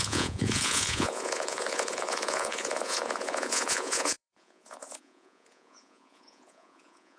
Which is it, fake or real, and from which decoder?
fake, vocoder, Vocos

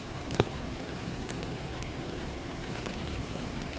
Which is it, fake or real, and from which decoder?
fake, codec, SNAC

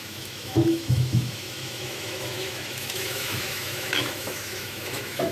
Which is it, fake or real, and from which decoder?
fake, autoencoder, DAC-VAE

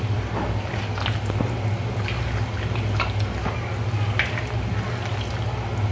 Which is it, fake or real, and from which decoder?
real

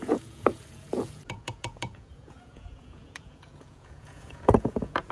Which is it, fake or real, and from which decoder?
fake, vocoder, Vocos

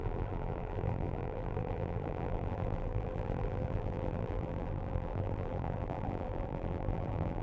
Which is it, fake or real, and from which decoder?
fake, vocoder, BigVGAN v2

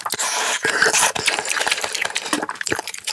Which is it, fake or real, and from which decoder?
fake, vocoder, BigVGAN v2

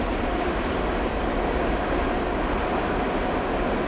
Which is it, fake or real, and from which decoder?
real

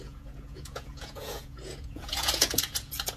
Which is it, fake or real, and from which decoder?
fake, vocoder, Vocos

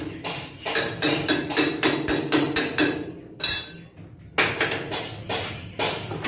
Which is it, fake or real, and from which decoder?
real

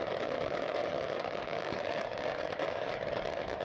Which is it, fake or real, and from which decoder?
fake, codec, DAC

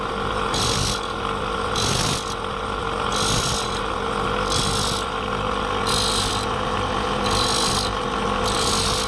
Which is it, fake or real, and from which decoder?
real